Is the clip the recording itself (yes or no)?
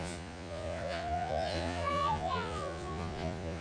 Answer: no